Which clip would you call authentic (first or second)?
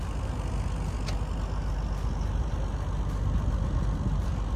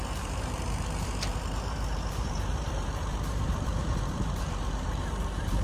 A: first